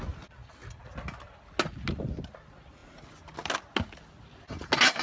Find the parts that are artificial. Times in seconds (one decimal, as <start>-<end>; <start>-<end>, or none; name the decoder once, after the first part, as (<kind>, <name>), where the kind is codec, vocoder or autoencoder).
none